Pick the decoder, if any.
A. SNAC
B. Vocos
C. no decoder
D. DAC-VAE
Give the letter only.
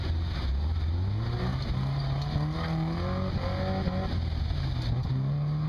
C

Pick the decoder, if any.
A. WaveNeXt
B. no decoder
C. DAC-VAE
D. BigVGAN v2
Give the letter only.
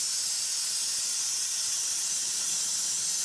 B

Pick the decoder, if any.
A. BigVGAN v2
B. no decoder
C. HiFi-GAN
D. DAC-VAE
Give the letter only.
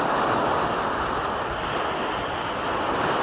B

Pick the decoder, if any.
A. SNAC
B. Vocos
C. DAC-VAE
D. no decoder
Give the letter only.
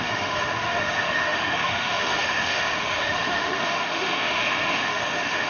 C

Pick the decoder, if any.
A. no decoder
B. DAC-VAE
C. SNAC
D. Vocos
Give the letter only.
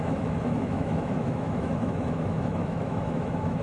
B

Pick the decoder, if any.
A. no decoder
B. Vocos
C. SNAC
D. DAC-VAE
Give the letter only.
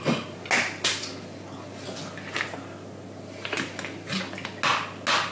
A